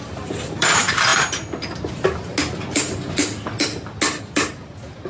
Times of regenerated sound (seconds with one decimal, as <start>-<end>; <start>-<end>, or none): 0.0-1.1; 4.2-5.1